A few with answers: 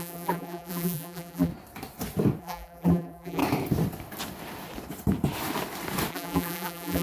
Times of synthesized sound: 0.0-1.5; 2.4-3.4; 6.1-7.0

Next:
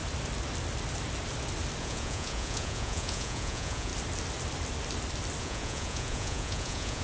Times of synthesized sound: 1.8-3.9; 5.4-7.0

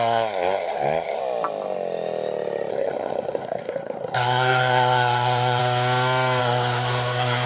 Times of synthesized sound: 0.0-1.2; 2.7-5.6; 6.4-7.5

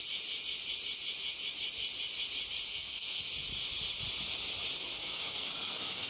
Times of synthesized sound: 2.7-3.2; 4.8-6.1

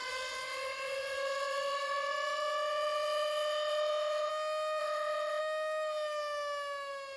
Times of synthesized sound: 0.0-4.3; 4.8-5.4

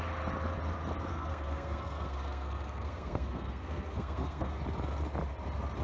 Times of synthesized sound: 1.1-4.6

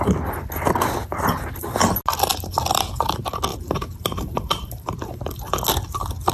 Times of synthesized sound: 3.5-5.2